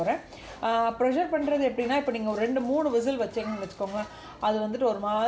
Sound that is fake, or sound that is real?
real